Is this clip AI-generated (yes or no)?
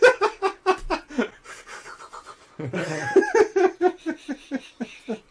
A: no